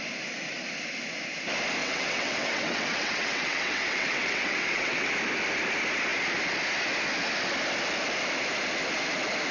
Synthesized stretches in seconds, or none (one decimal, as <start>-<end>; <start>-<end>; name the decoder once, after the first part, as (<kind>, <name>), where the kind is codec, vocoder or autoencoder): 1.8-5.1 (vocoder, WaveNeXt)